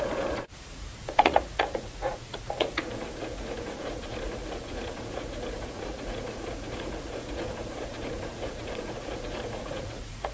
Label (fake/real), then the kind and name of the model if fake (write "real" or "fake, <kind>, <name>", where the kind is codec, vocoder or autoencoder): fake, vocoder, Vocos